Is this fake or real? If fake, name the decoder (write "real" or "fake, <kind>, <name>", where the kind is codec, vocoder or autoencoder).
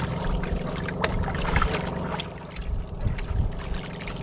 real